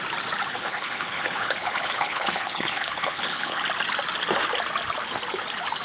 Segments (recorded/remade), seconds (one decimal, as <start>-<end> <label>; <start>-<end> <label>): 0.0-0.6 recorded; 0.6-3.6 remade; 3.6-5.8 recorded